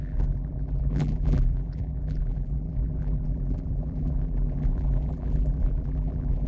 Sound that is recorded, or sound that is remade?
remade